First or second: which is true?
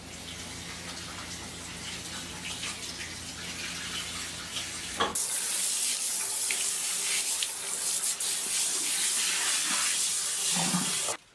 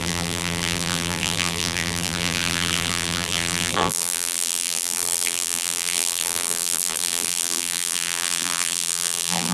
first